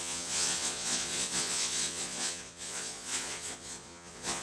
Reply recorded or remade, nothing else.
remade